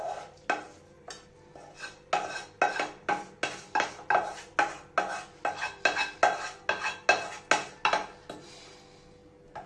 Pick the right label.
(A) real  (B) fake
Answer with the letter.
A